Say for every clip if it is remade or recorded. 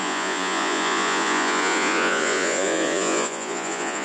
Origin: remade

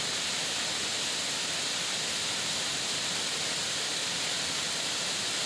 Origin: recorded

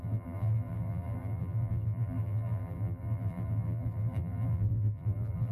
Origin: remade